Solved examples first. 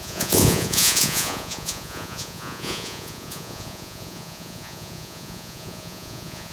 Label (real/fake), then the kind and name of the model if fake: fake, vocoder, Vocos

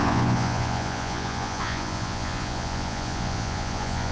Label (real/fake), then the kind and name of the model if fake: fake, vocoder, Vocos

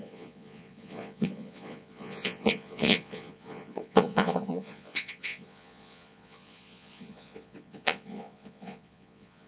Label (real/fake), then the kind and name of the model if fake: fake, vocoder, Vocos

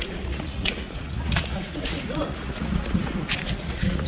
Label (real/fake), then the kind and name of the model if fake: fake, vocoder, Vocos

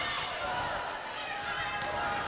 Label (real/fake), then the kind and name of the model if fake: real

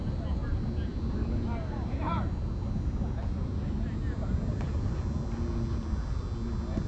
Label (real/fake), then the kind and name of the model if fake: real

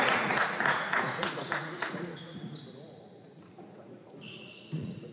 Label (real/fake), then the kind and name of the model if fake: fake, vocoder, Vocos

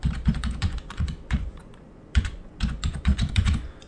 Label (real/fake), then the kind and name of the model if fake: fake, vocoder, Vocos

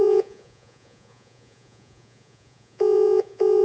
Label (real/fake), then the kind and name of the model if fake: fake, vocoder, Vocos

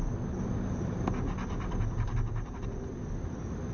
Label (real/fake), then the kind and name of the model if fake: real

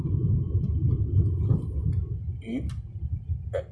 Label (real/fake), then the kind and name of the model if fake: real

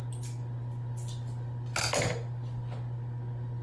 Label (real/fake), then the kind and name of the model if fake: real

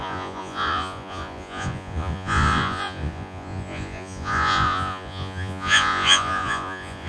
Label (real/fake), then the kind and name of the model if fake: fake, vocoder, Vocos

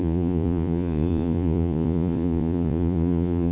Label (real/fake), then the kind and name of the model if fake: fake, vocoder, Vocos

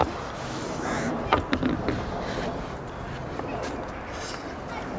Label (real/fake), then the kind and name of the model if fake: real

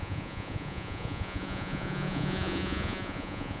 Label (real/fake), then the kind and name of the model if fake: fake, vocoder, Vocos